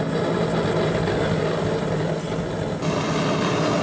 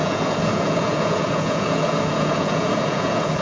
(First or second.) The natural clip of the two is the first